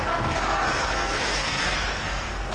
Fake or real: fake